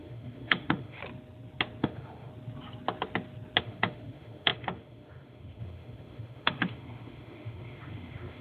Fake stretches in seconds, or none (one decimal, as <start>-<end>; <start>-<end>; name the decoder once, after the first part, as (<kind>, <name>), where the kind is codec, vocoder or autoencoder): 0.0-1.0 (autoencoder, DAC-VAE); 1.8-2.3; 3.6-8.4